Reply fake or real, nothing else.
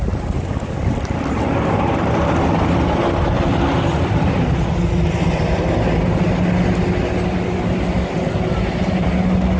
real